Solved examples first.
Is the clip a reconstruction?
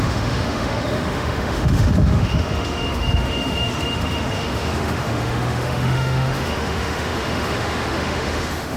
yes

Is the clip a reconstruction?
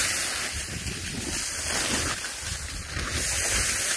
no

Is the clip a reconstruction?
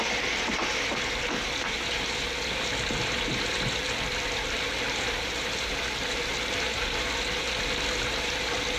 no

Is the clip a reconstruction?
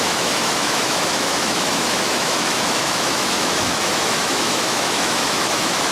yes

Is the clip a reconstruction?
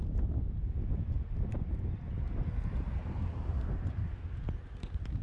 no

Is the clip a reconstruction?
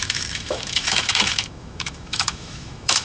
yes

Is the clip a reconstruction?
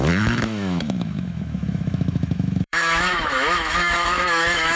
yes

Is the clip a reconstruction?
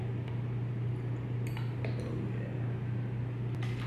no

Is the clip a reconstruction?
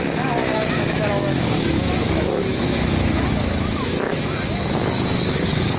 yes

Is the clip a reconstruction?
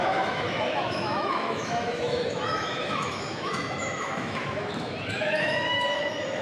yes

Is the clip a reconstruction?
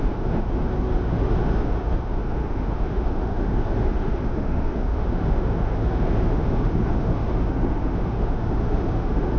yes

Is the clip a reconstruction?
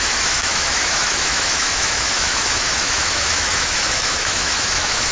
yes